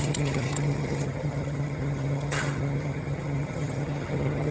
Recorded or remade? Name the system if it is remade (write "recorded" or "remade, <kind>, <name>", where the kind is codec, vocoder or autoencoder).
remade, vocoder, HiFi-GAN